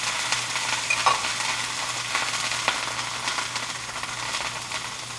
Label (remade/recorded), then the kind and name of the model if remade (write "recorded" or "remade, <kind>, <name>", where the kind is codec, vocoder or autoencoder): recorded